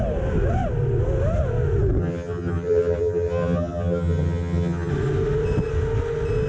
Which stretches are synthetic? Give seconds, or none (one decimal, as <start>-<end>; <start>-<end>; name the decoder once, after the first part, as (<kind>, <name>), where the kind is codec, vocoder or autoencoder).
2.0-4.9 (vocoder, HiFi-GAN)